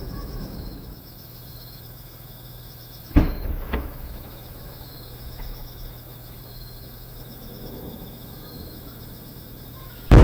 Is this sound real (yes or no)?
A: no